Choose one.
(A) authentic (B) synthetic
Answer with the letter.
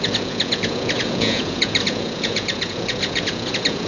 B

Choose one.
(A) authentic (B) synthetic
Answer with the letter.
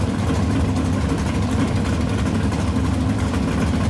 A